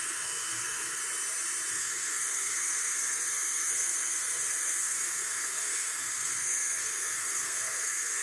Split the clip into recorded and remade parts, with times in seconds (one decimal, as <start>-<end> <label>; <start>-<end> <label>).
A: 0.0-1.0 remade; 1.0-1.7 recorded; 1.7-8.2 remade